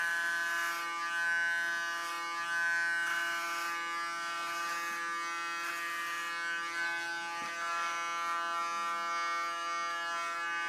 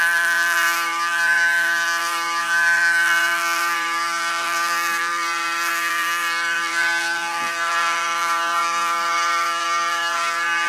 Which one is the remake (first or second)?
second